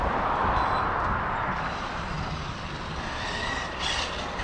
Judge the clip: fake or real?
real